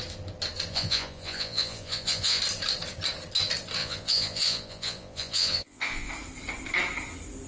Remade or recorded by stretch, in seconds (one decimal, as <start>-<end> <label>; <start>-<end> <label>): 0.0-0.7 recorded; 0.7-2.4 remade; 2.4-3.8 recorded; 3.8-6.1 remade; 6.1-7.5 recorded